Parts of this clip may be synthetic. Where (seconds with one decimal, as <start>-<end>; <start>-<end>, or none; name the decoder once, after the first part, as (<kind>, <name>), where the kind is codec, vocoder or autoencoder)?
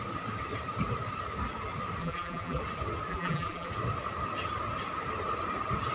2.0-2.6 (vocoder, BigVGAN v2); 3.1-3.7